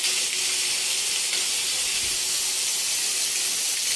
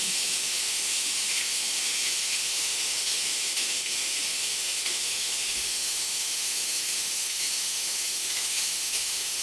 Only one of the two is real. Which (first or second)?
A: first